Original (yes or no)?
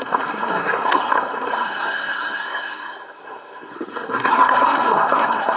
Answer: no